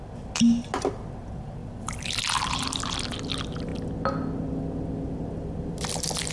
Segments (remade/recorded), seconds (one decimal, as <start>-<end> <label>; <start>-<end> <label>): 0.0-1.6 recorded; 1.6-2.8 remade; 2.8-6.3 recorded